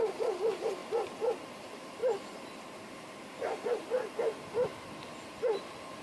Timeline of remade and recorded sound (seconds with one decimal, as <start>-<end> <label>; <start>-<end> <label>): 0.0-2.0 recorded; 2.0-3.1 remade; 3.1-6.0 recorded